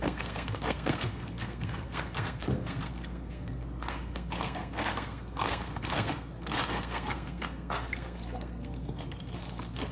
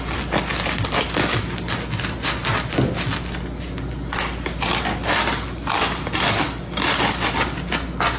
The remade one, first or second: first